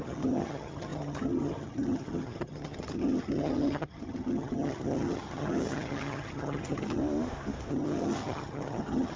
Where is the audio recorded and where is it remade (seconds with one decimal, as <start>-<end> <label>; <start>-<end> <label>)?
0.0-7.0 remade; 7.0-7.7 recorded; 7.7-9.2 remade

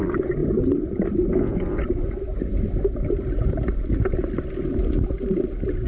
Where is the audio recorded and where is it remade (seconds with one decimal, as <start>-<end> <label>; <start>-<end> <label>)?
0.0-5.9 recorded

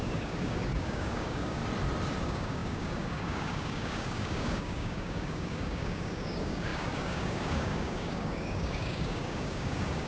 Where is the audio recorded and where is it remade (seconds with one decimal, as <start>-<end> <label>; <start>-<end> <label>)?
0.0-1.6 remade; 1.6-2.2 recorded; 2.2-10.1 remade